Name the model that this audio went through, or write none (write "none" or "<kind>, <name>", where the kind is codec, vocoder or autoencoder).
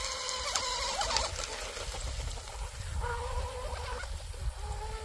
none